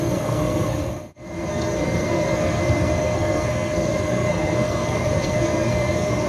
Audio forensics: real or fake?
fake